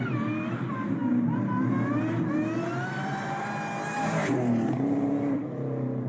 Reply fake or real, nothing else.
real